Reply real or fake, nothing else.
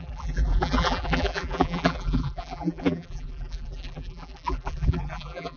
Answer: fake